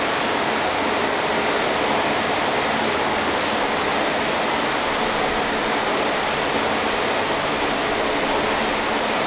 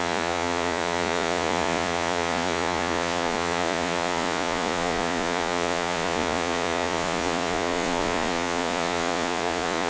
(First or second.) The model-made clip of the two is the second